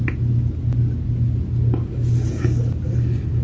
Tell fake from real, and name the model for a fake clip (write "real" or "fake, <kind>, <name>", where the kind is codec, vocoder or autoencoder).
real